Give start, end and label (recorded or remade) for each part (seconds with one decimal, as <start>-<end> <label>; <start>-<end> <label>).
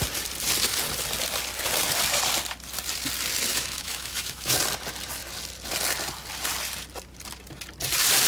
0.0-3.5 recorded; 3.5-4.6 remade; 4.6-8.3 recorded